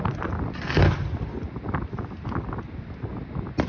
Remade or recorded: recorded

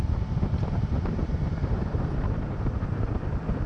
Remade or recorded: remade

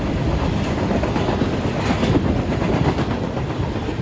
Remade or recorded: recorded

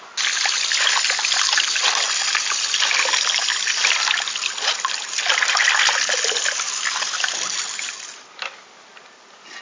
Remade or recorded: recorded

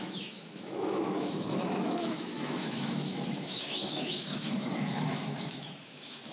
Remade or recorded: remade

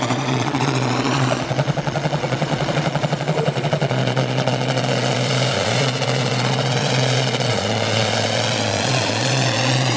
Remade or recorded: remade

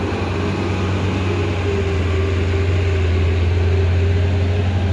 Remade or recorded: recorded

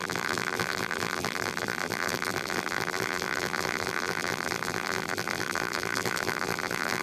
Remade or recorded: remade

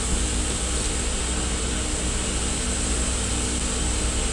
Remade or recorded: recorded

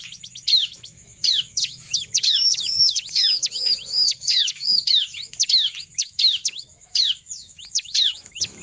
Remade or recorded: remade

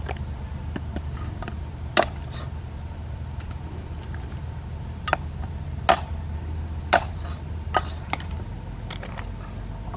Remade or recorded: recorded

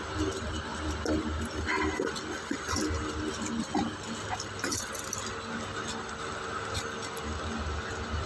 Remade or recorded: recorded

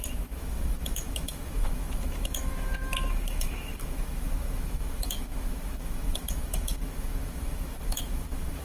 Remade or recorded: remade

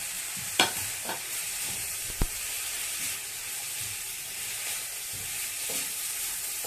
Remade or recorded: remade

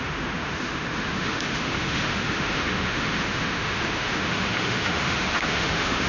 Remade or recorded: remade